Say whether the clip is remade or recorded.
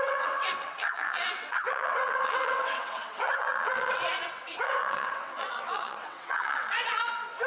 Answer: remade